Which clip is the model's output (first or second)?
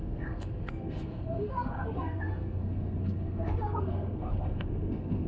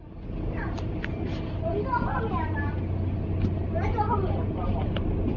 first